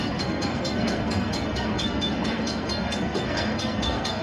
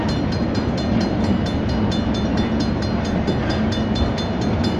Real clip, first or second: second